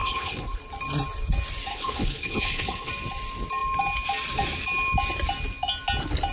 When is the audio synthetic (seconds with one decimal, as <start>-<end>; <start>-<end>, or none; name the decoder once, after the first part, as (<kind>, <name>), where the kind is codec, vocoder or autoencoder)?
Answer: 0.0-0.6 (codec, HILCodec); 1.7-2.9

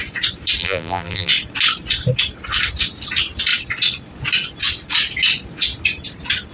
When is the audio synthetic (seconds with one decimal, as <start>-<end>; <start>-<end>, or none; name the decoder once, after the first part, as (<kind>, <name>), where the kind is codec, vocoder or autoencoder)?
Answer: 0.6-1.3 (vocoder, BigVGAN v2)

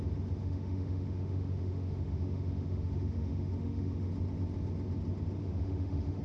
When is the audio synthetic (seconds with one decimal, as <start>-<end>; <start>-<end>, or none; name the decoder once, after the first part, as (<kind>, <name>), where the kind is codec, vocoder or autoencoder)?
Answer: 0.4-4.1 (autoencoder, DAC-VAE); 5.4-6.2

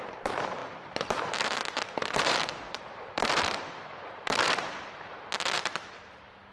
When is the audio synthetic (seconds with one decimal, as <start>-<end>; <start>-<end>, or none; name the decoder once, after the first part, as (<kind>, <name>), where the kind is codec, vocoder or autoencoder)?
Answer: 0.0-6.5 (vocoder, BigVGAN v2)